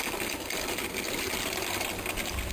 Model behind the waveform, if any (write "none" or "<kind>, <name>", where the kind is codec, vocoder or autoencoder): none